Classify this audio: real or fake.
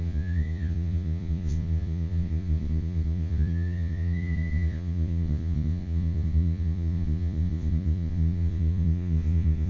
fake